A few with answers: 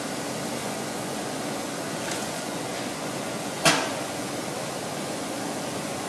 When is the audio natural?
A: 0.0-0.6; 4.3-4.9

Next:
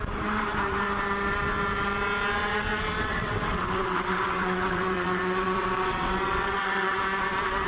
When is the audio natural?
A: 0.0-2.4; 7.0-7.7

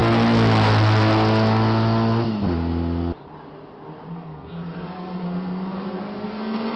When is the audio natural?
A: 0.0-4.1

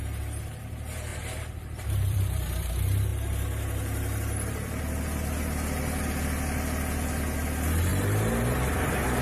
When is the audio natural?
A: 0.0-1.1; 2.7-7.9

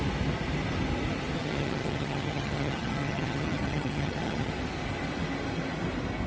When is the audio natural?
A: 0.0-1.4; 4.5-6.3